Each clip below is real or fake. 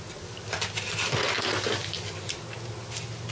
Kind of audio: real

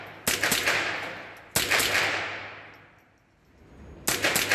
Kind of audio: real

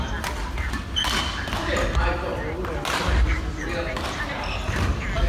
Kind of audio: real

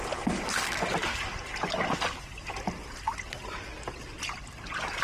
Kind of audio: real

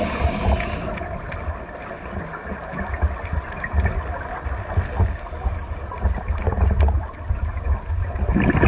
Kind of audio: real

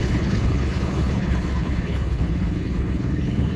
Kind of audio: fake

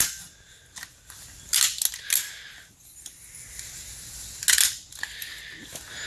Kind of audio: real